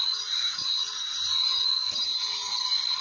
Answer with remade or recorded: remade